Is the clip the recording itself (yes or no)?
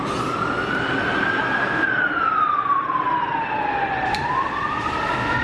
yes